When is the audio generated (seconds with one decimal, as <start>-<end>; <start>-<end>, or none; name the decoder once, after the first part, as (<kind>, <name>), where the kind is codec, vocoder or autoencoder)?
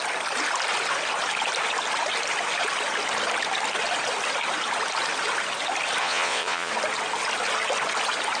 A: 6.0-6.7 (vocoder, Vocos)